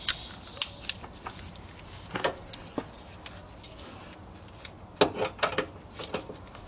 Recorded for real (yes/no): yes